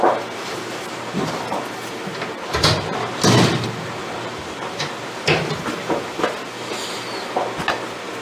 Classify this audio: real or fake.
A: real